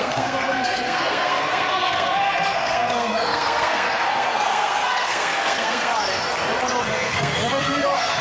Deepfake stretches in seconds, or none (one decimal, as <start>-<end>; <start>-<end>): 0.0-5.9; 6.8-8.2